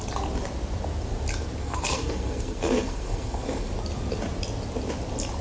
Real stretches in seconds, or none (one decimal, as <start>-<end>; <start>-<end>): 0.0-1.6; 3.7-5.4